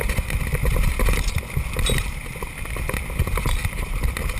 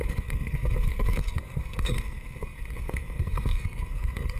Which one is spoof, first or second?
second